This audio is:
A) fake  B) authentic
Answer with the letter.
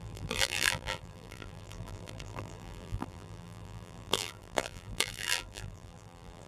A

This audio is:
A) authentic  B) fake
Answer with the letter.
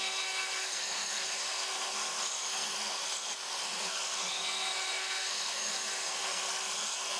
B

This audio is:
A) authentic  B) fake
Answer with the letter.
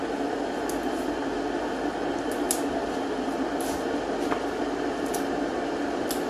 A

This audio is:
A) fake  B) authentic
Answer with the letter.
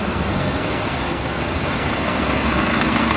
A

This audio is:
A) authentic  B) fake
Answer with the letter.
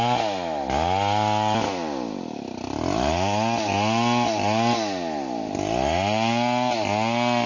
A